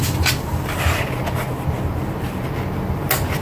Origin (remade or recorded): recorded